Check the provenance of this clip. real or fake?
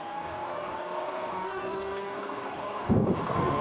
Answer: fake